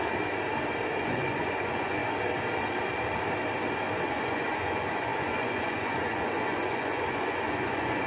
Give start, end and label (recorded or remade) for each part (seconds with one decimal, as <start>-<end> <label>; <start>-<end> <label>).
0.0-1.0 recorded; 1.0-2.0 remade; 2.0-4.1 recorded; 4.1-8.1 remade